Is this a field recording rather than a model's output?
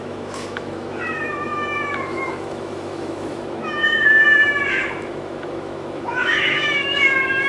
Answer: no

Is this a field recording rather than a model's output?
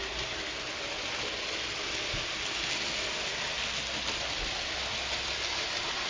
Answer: yes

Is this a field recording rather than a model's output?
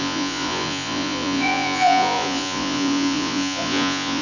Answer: no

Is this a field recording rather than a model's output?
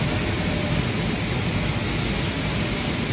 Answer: yes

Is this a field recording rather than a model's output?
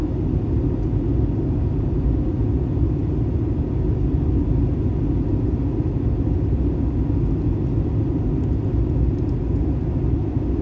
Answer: yes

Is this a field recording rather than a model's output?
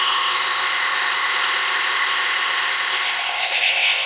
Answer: no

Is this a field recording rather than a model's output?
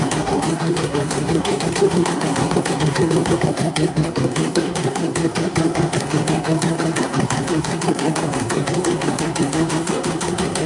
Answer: no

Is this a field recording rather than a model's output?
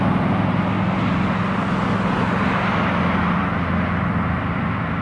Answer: yes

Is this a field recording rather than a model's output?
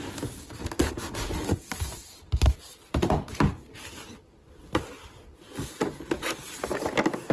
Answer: yes